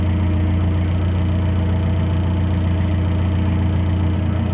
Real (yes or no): yes